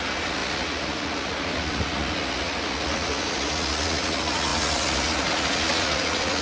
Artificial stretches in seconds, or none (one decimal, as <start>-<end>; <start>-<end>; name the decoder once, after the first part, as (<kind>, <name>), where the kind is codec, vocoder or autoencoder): 0.0-6.4 (vocoder, Vocos)